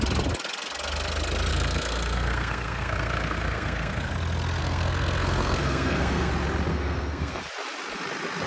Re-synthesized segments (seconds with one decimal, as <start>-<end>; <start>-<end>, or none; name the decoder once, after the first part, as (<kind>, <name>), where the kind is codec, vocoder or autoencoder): 1.5-4.1 (codec, SNAC); 4.6-6.3; 6.7-7.4

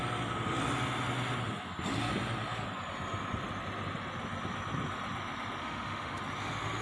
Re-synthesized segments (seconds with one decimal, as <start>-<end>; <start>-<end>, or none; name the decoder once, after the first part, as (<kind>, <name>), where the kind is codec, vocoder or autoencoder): 5.6-6.2 (autoencoder, DAC-VAE)

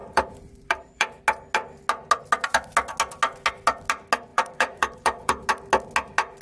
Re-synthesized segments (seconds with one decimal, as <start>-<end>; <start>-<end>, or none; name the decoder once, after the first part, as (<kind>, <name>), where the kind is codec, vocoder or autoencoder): 0.0-1.2 (vocoder, BigVGAN v2); 4.3-5.5

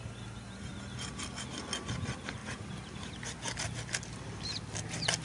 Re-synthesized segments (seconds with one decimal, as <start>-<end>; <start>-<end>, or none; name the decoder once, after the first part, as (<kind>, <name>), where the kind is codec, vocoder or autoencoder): none